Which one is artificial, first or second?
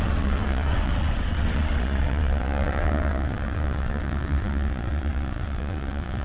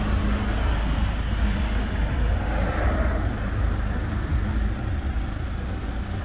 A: first